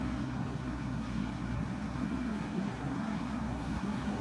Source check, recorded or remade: remade